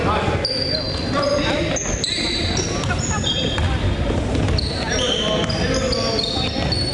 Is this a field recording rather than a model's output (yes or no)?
yes